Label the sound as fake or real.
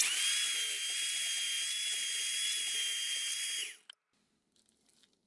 real